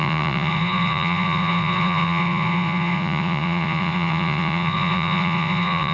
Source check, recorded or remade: remade